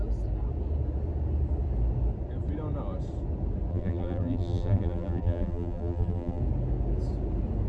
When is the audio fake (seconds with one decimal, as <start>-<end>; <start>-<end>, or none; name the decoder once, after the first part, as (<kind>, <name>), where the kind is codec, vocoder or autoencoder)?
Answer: 3.7-6.4 (vocoder, BigVGAN v2)